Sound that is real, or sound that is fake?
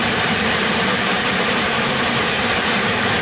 fake